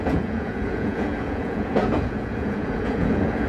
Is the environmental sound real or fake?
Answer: fake